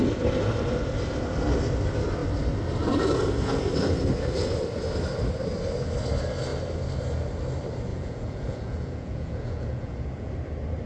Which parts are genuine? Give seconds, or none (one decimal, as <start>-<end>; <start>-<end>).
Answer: 0.0-7.9; 10.3-10.9